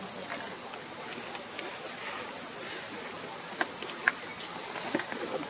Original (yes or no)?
yes